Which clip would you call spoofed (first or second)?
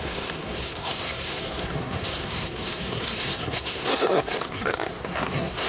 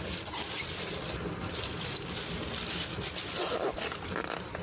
first